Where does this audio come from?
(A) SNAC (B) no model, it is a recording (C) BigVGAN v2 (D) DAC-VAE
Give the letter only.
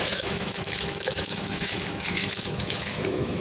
D